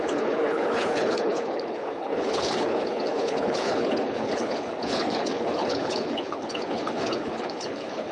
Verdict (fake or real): fake